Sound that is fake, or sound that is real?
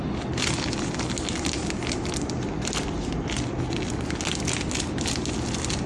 real